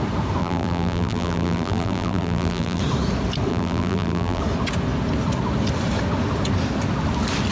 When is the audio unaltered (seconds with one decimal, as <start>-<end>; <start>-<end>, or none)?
0.0-0.4; 2.8-3.5; 4.4-7.5